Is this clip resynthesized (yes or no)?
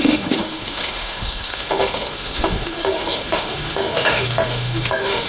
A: yes